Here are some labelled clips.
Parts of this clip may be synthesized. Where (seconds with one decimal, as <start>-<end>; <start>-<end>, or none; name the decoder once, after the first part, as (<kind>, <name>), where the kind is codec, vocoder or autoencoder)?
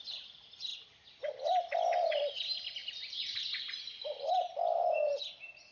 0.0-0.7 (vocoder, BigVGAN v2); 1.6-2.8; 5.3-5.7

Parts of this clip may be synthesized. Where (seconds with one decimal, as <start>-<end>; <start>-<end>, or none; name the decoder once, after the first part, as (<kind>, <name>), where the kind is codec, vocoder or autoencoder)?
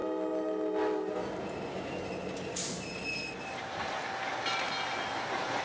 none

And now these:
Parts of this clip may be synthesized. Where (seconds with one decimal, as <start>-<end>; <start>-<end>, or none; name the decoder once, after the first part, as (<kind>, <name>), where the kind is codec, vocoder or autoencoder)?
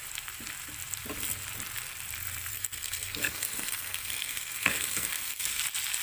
2.5-5.6 (codec, SNAC)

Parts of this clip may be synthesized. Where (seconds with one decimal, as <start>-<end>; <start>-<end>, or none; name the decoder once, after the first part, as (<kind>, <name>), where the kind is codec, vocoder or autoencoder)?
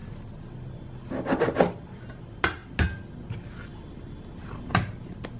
none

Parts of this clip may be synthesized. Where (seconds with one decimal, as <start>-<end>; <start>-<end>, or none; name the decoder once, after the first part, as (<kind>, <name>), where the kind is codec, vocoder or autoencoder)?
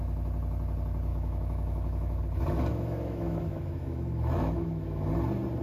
1.1-2.2 (autoencoder, DAC-VAE); 2.7-5.1